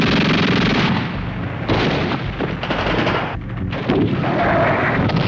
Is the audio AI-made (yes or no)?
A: no